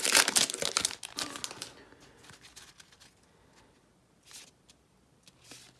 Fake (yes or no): no